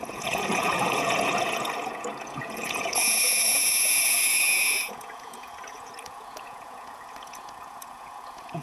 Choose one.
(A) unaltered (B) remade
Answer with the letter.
B